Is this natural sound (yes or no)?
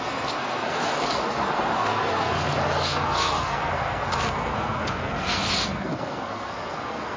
no